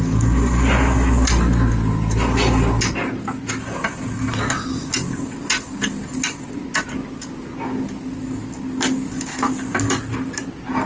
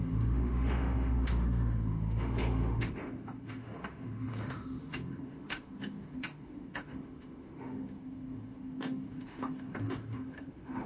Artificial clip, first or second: second